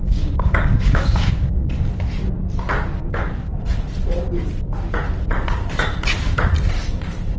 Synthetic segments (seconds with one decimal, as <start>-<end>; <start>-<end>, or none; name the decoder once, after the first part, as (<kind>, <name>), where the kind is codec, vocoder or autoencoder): 0.0-1.3 (codec, DAC)